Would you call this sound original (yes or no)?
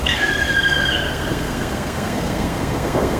no